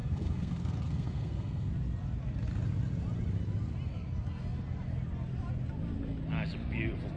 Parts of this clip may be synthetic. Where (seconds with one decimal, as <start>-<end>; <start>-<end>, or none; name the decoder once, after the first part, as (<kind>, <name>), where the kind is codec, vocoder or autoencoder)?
0.0-1.7 (codec, SNAC)